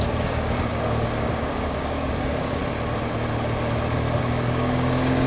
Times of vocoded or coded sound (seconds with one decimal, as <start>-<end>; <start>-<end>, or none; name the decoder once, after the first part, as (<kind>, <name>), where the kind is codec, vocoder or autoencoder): 0.0-2.6 (codec, DAC); 4.2-5.3